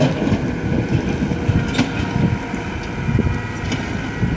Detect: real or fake real